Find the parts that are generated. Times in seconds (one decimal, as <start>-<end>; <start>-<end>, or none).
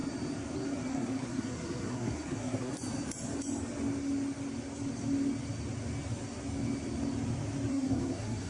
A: 0.9-2.7; 7.7-8.5